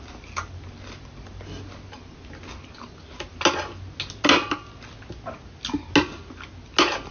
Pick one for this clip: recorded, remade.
recorded